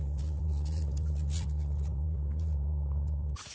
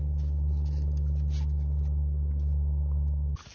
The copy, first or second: first